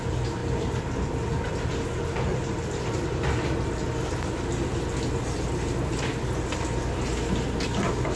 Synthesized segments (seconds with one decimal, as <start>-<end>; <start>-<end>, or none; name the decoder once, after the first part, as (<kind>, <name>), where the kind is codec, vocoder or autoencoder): 0.4-1.5 (vocoder, BigVGAN v2); 2.3-2.9